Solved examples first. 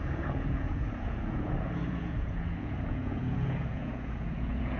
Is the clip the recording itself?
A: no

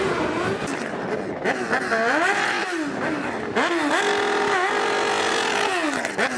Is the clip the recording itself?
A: yes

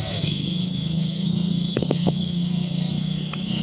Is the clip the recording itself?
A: no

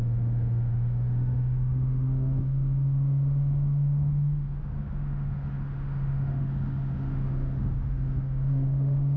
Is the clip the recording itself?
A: no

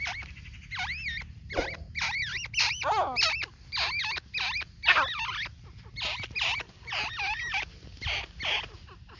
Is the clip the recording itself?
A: yes